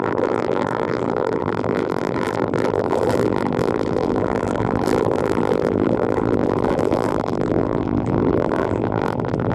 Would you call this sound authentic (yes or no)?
no